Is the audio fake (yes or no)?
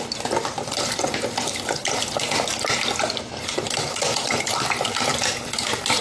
no